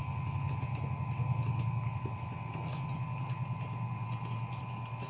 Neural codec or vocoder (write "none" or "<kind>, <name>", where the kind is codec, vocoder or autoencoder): none